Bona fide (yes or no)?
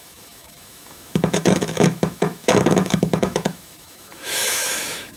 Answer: no